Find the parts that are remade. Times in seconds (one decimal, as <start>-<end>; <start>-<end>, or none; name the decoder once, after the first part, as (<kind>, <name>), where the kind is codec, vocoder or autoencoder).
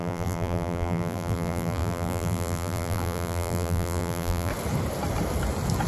0.0-4.5 (vocoder, BigVGAN v2)